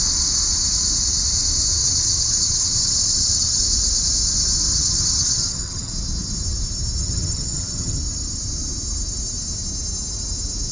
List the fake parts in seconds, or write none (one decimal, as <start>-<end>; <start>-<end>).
1.8-3.6; 4.7-5.9; 7.0-8.0